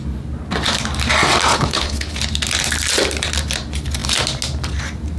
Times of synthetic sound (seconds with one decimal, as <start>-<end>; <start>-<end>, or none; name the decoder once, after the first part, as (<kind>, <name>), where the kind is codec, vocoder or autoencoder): 1.5-2.2 (codec, HILCodec)